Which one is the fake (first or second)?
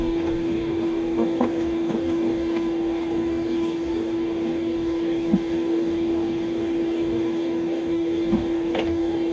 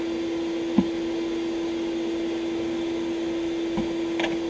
first